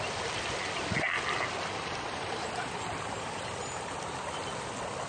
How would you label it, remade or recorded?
recorded